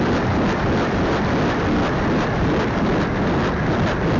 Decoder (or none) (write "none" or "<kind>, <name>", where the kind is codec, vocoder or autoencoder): none